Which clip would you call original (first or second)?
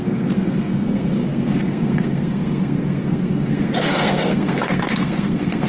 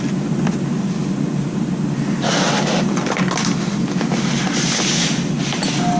second